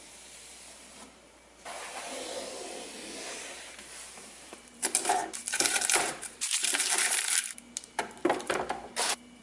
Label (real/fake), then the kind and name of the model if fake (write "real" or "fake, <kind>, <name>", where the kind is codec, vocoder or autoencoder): fake, vocoder, BigVGAN v2